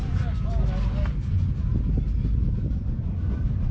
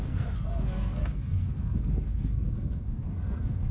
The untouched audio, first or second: first